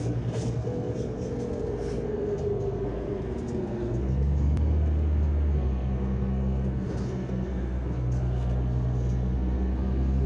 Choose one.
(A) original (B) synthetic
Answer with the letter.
B